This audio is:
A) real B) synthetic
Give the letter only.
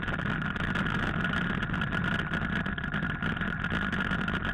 A